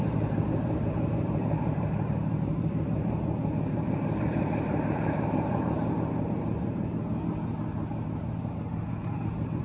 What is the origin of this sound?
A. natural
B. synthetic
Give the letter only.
B